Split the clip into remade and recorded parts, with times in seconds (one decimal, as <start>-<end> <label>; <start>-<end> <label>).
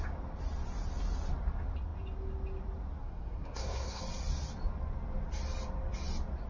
0.0-3.0 recorded; 3.0-4.0 remade; 4.0-6.5 recorded